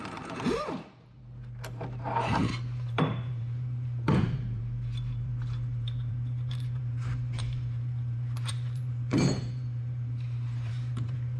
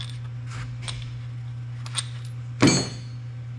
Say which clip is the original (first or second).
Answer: second